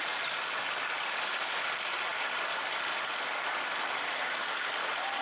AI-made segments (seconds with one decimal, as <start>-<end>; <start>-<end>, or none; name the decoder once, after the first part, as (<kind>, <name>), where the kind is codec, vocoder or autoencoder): none